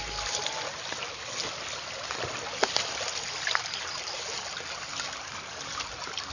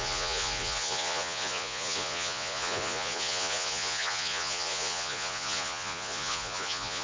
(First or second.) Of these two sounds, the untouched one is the first